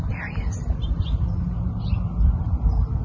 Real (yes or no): yes